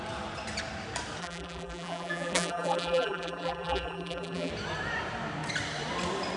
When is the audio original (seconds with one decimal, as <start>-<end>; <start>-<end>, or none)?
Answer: 0.0-1.2; 4.5-6.4